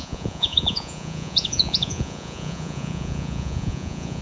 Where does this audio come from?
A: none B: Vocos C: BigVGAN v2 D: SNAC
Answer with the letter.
B